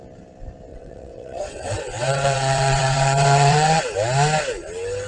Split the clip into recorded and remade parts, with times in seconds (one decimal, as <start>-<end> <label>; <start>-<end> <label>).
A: 0.0-0.7 recorded; 0.7-3.8 remade; 3.8-5.1 recorded